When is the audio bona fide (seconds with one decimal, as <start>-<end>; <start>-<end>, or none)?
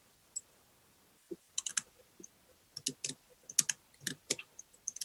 1.7-5.0